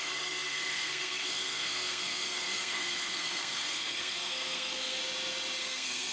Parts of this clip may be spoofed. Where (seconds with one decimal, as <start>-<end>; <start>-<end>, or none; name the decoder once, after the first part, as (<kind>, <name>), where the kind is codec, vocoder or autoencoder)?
0.0-5.0 (codec, SNAC); 5.6-6.1